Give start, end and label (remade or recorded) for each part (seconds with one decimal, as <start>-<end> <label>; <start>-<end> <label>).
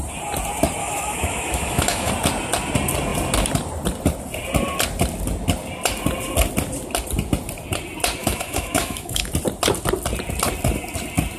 0.0-0.8 recorded; 0.8-2.1 remade; 2.1-8.2 recorded; 8.2-9.3 remade; 9.3-11.4 recorded